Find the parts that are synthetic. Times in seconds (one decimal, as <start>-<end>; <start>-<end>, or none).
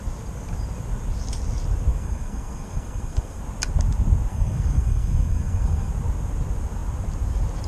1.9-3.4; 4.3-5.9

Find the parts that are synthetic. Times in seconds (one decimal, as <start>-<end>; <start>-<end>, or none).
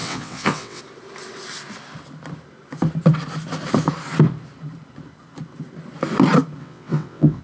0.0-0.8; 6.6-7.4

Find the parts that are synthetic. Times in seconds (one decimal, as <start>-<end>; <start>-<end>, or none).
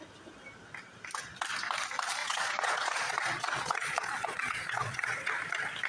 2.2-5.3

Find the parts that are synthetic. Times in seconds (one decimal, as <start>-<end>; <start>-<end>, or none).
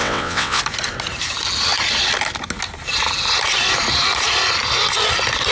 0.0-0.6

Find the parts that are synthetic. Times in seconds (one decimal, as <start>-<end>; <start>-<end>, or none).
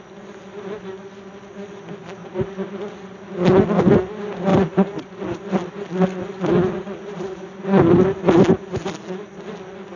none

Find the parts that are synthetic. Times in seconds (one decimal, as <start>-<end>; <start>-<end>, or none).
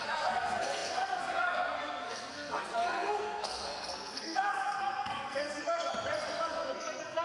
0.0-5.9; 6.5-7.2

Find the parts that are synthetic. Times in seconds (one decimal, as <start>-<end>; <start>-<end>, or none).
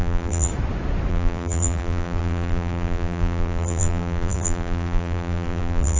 0.0-0.5; 1.1-6.0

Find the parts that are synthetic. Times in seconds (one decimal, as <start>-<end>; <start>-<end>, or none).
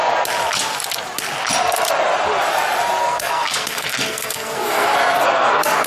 3.0-5.9